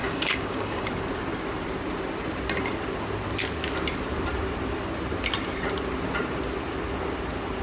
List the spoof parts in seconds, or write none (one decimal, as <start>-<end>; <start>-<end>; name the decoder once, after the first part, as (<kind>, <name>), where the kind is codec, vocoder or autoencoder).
0.0-0.9 (codec, DAC)